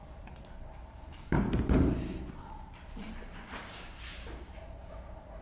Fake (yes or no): yes